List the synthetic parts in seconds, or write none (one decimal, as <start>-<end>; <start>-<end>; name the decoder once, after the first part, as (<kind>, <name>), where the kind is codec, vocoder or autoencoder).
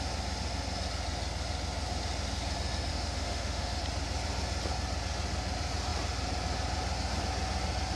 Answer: 2.9-3.8 (autoencoder, DAC-VAE)